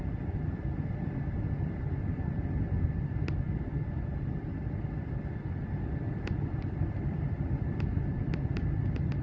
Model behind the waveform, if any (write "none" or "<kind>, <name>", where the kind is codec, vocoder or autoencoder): none